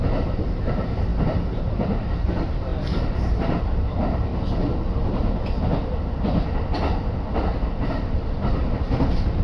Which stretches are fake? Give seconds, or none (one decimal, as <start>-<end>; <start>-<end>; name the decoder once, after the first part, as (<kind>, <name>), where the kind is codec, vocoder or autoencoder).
0.0-4.3 (vocoder, BigVGAN v2); 7.4-9.4